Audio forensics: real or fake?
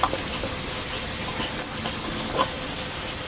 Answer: real